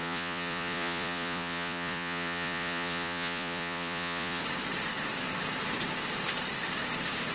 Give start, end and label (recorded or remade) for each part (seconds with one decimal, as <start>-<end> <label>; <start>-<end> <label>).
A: 0.0-4.4 remade; 4.4-7.3 recorded